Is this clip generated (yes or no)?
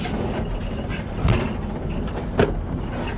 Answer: no